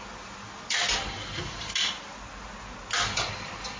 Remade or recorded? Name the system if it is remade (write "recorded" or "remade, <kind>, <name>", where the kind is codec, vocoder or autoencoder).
recorded